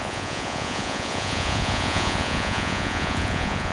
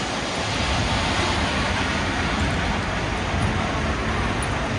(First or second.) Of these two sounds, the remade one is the first